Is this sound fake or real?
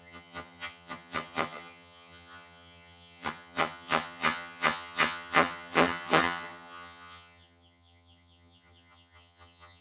fake